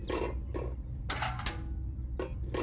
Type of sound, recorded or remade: recorded